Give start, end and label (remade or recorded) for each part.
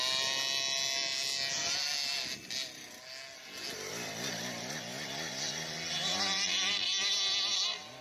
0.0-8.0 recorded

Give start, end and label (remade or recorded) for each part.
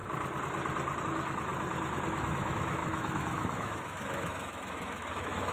0.0-1.0 recorded; 1.0-1.5 remade; 1.5-2.1 recorded; 2.1-5.5 remade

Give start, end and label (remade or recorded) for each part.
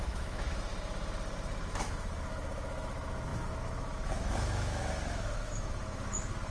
0.0-0.7 remade; 0.7-1.7 recorded; 1.7-6.5 remade